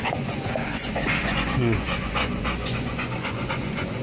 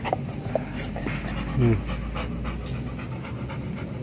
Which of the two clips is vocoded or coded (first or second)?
first